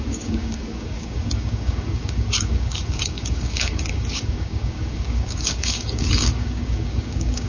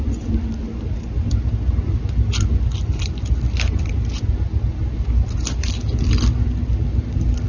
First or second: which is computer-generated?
first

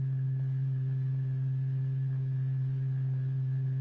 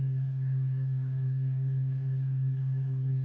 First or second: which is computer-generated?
second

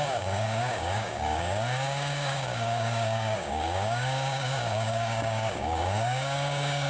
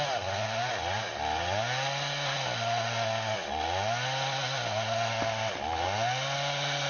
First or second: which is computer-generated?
first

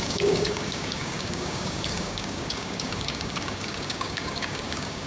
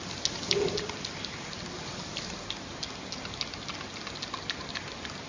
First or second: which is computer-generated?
first